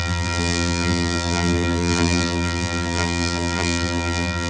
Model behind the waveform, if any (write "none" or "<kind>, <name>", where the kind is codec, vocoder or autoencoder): vocoder, BigVGAN v2